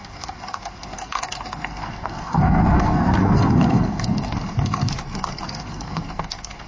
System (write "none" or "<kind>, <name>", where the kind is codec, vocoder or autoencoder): codec, SNAC